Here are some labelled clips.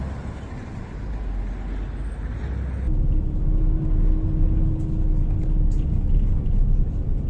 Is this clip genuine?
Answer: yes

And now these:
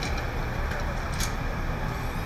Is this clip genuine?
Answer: yes